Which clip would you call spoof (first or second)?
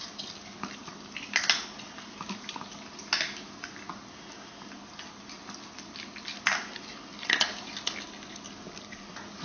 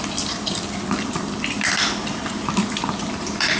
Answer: second